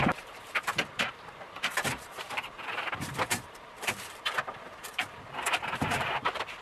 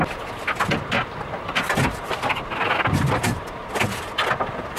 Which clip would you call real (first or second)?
second